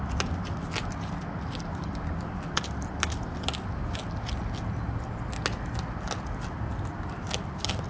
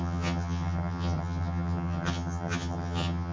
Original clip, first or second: first